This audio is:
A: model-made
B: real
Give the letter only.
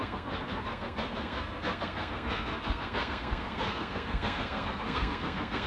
A